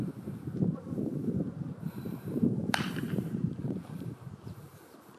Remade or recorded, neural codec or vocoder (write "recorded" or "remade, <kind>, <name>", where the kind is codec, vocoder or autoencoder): remade, vocoder, BigVGAN v2